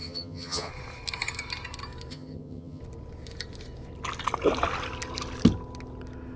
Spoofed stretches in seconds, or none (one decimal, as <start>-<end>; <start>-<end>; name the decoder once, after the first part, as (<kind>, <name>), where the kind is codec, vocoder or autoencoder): 0.0-0.7 (vocoder, HiFi-GAN); 2.1-2.8